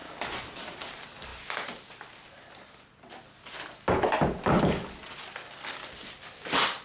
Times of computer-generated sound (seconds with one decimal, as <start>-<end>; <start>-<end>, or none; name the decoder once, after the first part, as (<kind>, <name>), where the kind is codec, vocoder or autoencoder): 0.0-0.9 (vocoder, BigVGAN v2); 5.0-5.6